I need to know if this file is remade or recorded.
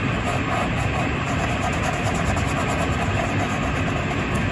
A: recorded